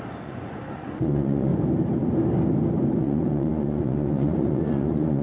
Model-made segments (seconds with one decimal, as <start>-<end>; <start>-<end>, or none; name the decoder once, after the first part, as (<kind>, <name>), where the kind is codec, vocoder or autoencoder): 0.0-1.5 (vocoder, Vocos); 3.0-5.2